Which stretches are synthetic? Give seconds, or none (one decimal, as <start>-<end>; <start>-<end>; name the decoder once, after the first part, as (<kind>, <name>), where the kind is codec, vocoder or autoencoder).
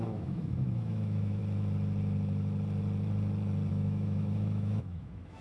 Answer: 0.0-1.4 (autoencoder, DAC-VAE); 3.7-5.4